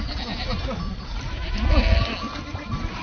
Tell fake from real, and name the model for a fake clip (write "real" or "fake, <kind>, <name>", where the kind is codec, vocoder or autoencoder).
real